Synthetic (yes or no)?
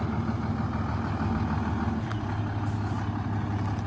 no